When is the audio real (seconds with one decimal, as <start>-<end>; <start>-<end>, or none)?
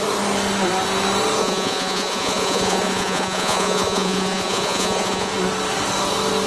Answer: 0.0-1.4; 5.3-6.5